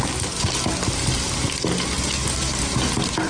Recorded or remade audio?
recorded